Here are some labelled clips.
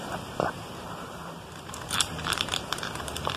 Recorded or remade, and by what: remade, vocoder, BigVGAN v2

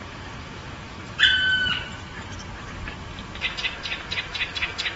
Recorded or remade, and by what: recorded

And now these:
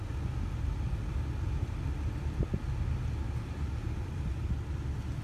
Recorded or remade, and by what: recorded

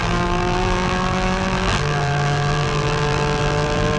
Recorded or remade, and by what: remade, vocoder, BigVGAN v2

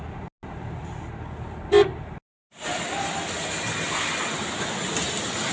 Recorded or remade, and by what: recorded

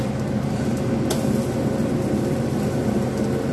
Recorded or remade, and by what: recorded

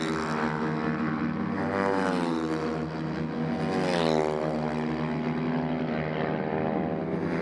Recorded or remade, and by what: recorded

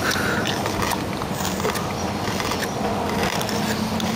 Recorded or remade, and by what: recorded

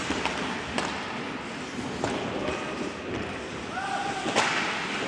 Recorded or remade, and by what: recorded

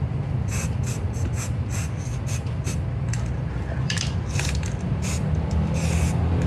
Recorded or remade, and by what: recorded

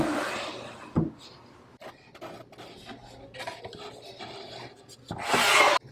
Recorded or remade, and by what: recorded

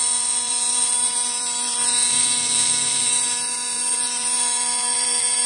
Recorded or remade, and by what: remade, vocoder, BigVGAN v2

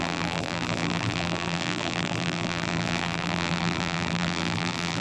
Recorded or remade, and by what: remade, vocoder, BigVGAN v2